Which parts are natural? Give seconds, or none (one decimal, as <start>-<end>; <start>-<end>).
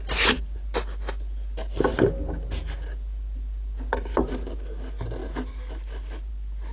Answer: 0.0-6.7